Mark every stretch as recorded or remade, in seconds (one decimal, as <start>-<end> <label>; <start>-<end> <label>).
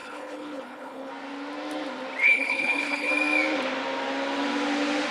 0.0-1.1 remade; 1.1-2.2 recorded; 2.2-3.1 remade; 3.1-5.1 recorded